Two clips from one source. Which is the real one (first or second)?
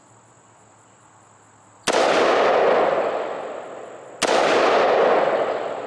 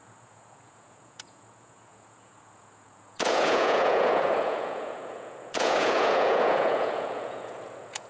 first